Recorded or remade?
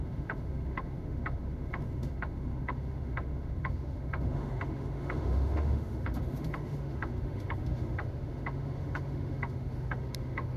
remade